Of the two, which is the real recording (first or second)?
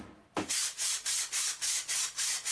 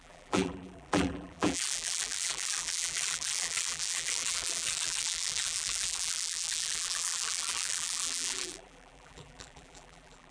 first